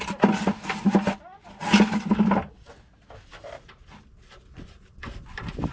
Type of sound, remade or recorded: recorded